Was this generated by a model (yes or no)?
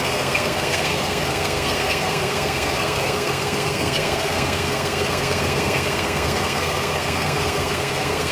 yes